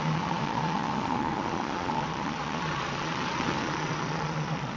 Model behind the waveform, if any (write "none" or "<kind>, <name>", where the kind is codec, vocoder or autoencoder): vocoder, Vocos